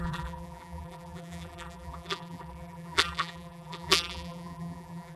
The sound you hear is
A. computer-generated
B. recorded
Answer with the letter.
A